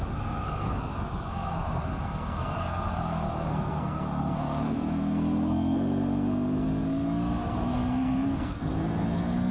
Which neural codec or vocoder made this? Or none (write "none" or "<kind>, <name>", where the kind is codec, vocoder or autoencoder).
codec, SNAC